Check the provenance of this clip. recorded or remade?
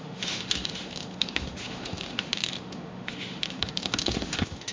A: remade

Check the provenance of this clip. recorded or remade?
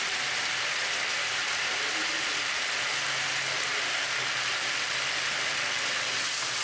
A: recorded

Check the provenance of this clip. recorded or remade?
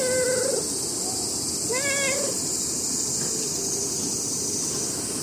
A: recorded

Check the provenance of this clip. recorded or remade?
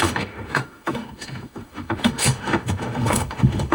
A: remade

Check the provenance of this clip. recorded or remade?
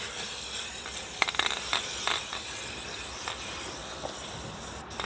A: recorded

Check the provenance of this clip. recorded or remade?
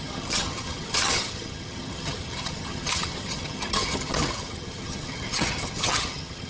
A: remade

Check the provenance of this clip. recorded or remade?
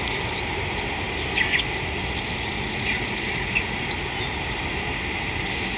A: recorded